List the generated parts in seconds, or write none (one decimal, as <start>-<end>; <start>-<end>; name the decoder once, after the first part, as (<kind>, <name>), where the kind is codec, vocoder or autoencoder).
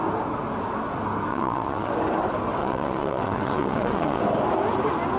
1.3-1.9 (vocoder, WaveNeXt); 2.6-4.2